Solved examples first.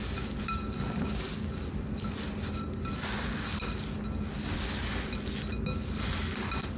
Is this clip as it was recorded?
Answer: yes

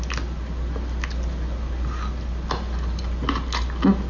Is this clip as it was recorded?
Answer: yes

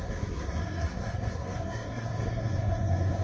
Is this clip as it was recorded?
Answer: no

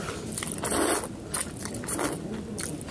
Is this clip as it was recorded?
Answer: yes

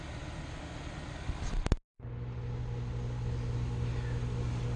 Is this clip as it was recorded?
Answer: yes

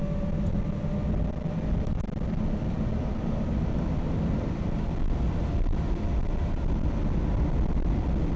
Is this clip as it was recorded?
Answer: yes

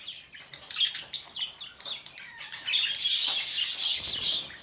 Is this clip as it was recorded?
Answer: yes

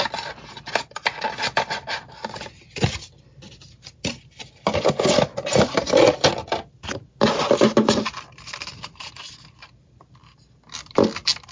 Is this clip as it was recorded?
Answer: yes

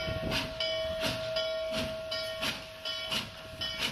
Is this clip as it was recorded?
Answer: yes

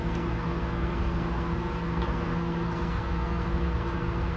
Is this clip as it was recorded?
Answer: no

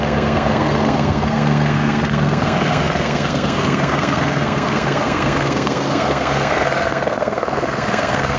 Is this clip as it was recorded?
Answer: no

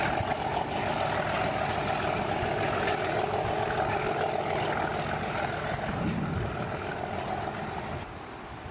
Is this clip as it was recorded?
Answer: yes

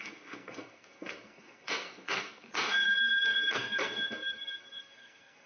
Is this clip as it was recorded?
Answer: no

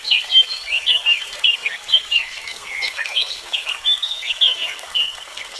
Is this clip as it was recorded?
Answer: no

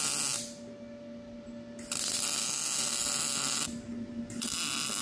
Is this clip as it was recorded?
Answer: yes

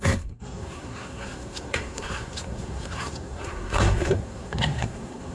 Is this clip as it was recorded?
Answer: no